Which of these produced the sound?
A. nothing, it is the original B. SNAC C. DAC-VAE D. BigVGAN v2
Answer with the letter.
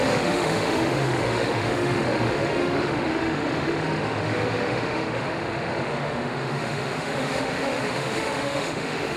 C